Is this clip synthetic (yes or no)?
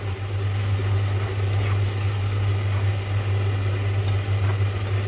no